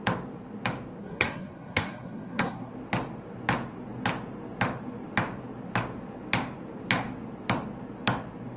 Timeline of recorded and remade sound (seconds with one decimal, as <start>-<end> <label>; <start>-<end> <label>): 0.0-1.0 recorded; 1.0-2.7 remade; 2.7-8.6 recorded